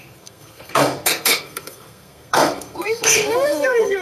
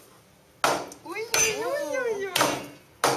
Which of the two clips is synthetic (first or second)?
first